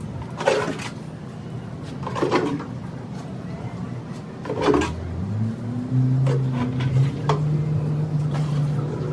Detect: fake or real real